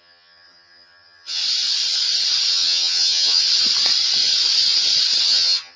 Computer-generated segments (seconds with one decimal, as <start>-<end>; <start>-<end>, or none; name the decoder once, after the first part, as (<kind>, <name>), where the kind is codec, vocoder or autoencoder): 0.0-1.4 (vocoder, HiFi-GAN); 2.5-3.4; 5.2-5.8